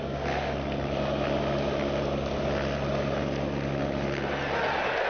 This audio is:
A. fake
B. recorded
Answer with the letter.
B